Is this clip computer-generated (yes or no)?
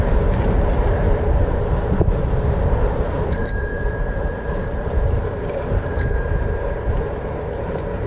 yes